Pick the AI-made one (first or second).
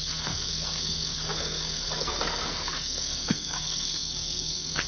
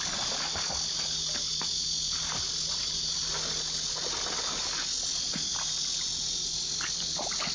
first